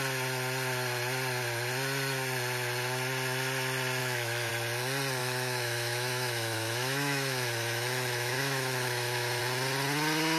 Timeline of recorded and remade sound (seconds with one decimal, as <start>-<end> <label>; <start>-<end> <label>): 0.0-4.0 recorded; 4.0-4.5 remade; 4.5-5.2 recorded; 5.2-9.4 remade; 9.4-10.4 recorded